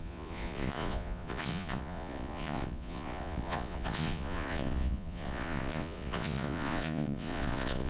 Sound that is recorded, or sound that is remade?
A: remade